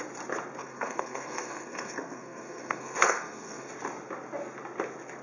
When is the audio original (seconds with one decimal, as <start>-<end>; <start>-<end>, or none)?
0.0-0.6; 3.7-5.2